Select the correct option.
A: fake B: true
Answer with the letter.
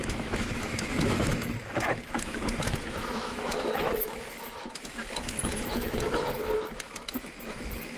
A